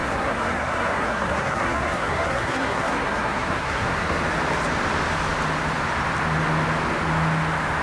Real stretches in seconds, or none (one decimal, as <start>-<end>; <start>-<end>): 4.2-7.8